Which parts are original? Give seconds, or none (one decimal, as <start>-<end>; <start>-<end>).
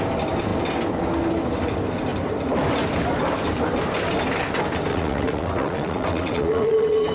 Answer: 0.0-4.9